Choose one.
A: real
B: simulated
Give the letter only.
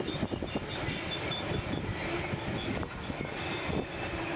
A